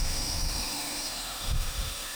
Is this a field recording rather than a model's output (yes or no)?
no